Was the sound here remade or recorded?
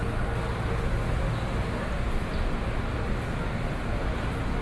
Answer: recorded